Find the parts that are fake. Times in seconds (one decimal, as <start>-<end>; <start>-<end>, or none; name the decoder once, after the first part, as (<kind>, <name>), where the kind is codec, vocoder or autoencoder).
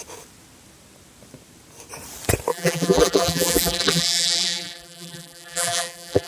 2.5-6.3 (vocoder, BigVGAN v2)